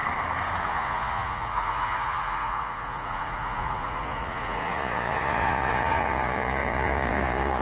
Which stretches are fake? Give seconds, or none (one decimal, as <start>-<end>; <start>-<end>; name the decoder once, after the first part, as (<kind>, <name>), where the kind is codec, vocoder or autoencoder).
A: 0.6-7.6 (vocoder, Vocos)